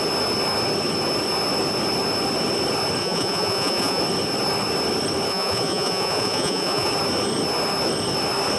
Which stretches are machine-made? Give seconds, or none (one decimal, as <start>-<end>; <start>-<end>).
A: 3.0-4.0; 5.3-6.9